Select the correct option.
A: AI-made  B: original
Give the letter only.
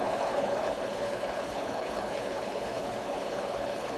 A